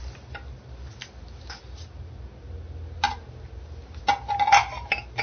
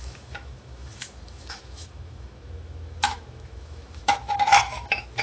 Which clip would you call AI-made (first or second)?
second